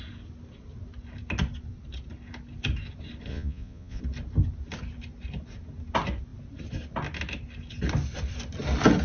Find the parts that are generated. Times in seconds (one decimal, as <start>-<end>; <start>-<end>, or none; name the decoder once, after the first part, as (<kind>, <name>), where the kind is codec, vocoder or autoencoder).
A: 3.3-4.0 (vocoder, Vocos)